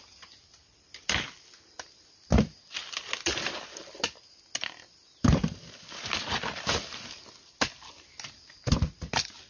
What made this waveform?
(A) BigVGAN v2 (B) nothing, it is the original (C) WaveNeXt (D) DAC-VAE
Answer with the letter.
B